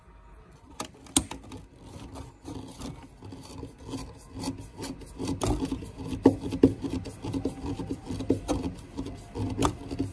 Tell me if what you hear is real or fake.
real